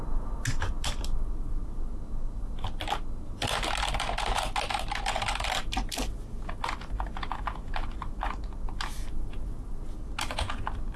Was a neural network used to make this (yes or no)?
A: no